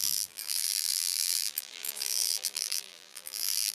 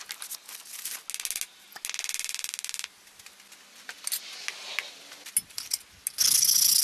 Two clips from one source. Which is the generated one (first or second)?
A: first